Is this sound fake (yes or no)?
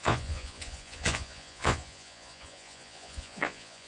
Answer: yes